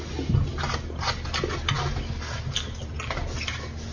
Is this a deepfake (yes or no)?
no